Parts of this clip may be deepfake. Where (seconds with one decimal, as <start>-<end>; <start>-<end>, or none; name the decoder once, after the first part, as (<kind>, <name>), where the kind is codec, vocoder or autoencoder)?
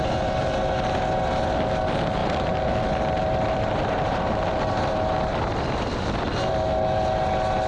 2.2-2.8 (vocoder, BigVGAN v2); 3.2-4.5